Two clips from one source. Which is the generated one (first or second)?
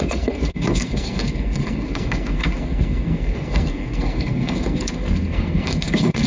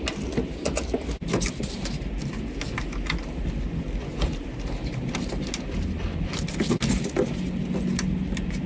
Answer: first